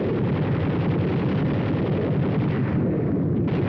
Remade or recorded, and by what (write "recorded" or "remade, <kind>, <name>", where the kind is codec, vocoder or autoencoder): recorded